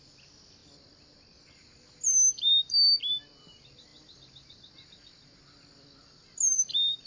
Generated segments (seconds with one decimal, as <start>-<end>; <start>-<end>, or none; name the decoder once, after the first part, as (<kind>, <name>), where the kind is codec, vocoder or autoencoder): none